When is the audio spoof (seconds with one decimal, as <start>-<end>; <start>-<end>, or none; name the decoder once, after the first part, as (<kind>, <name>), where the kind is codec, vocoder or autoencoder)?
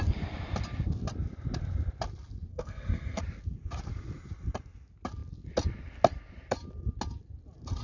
2.5-3.2 (codec, SNAC)